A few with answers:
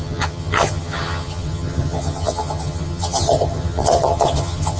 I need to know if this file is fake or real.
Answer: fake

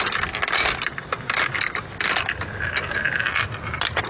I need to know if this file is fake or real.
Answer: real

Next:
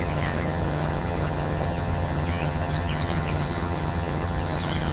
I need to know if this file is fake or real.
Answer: fake